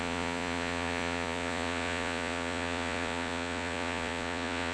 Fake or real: fake